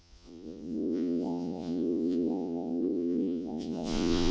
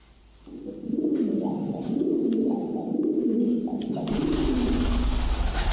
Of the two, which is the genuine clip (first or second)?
second